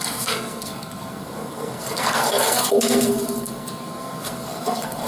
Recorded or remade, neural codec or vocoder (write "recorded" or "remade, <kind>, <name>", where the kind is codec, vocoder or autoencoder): remade, codec, SNAC